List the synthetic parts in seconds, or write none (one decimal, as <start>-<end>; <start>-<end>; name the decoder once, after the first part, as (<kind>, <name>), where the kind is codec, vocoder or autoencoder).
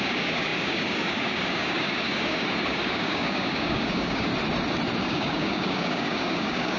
0.0-4.3 (codec, DAC); 5.0-6.8